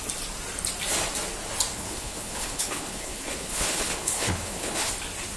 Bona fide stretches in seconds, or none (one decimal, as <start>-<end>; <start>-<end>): 0.0-1.7; 4.9-5.4